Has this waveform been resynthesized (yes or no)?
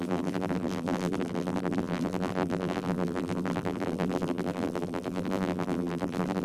yes